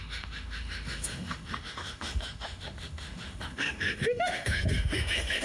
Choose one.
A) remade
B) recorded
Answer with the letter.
A